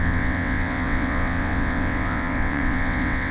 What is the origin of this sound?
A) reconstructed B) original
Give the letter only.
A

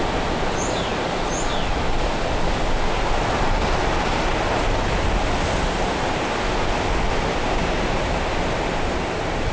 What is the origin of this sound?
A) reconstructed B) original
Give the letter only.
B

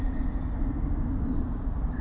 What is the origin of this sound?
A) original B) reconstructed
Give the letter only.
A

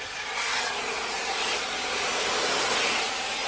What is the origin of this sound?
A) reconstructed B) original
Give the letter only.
B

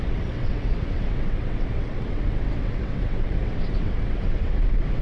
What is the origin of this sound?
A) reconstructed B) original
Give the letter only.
A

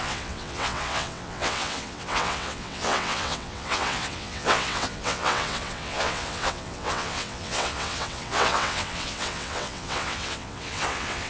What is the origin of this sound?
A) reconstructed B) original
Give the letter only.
A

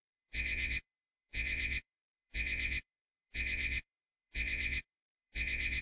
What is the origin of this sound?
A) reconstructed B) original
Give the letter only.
A